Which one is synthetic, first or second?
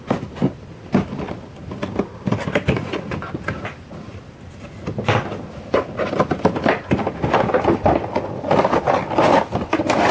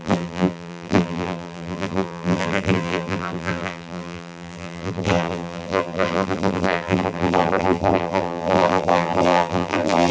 second